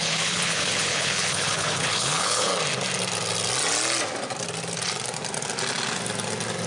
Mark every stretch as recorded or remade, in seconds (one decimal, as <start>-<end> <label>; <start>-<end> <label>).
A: 0.0-2.5 remade; 2.5-6.7 recorded